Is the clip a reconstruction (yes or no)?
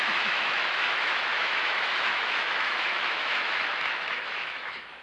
yes